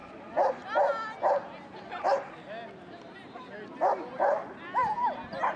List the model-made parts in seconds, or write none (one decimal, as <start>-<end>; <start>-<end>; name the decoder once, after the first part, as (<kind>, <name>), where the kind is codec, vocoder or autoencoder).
none